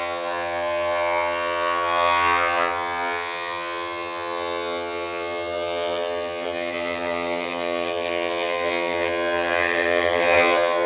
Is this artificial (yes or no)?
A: yes